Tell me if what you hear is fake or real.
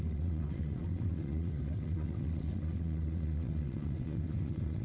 fake